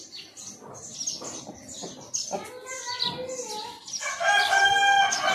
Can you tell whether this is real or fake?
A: real